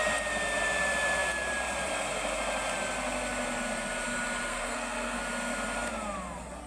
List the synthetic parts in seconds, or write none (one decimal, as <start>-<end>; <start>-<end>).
4.5-5.2